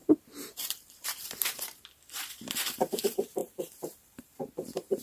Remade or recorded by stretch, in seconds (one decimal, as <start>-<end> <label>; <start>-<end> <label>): 0.0-3.0 remade; 3.0-3.4 recorded; 3.4-5.0 remade